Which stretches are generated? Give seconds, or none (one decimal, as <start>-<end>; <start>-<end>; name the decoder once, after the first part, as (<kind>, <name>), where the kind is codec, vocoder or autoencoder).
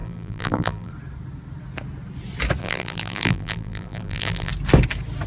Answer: 0.0-0.9 (vocoder, BigVGAN v2); 2.6-4.5